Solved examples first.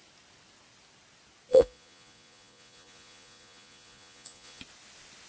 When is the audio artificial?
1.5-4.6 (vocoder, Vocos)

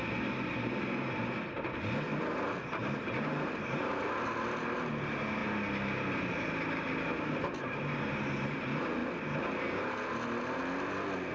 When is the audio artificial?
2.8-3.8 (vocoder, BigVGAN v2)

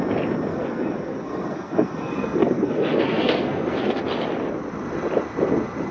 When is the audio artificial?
0.5-4.0 (codec, SNAC)